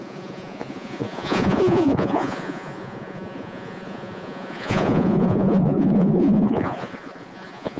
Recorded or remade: remade